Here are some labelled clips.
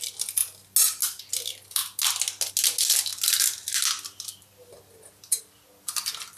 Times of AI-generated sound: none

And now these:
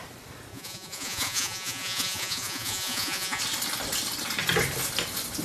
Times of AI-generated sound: 0.5-3.4 (vocoder, Vocos)

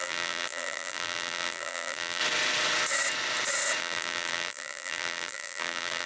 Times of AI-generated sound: 0.0-2.2 (vocoder, BigVGAN v2); 3.8-6.1

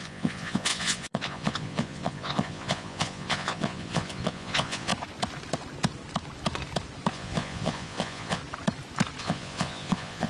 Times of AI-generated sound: 0.0-4.9 (vocoder, Vocos); 7.1-8.4; 9.2-10.3

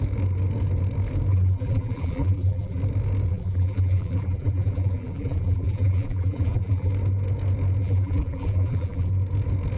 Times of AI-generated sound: 1.3-2.8 (vocoder, BigVGAN v2); 3.3-6.9; 7.8-9.1

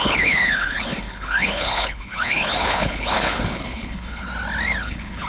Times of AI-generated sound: 0.0-4.3 (codec, HILCodec); 4.8-5.3

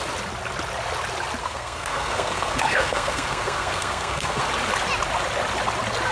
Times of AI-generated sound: 1.4-4.4 (codec, SNAC)

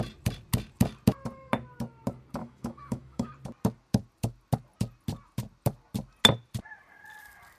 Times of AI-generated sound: 2.4-3.3 (autoencoder, DAC-VAE)